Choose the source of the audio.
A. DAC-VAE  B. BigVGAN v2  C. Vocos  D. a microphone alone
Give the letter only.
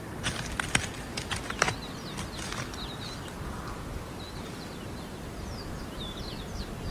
D